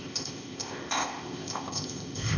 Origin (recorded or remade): remade